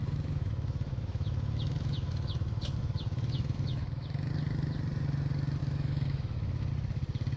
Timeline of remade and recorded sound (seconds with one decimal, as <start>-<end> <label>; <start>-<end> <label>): 0.0-4.3 remade; 4.3-5.6 recorded; 5.6-6.7 remade; 6.7-7.4 recorded